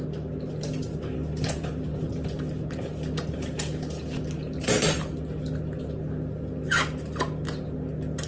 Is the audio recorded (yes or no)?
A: yes